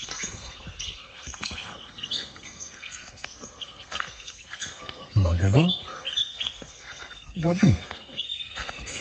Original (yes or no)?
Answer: no